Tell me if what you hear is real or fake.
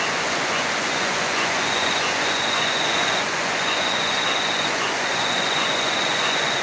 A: fake